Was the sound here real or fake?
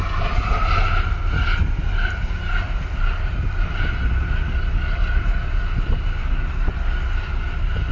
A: real